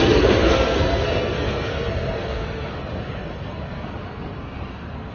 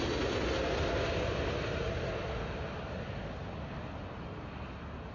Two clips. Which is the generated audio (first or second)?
first